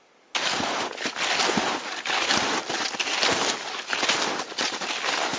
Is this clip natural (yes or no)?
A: yes